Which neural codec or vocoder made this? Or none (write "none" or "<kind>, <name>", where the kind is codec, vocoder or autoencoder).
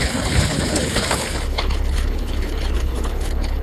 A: codec, HILCodec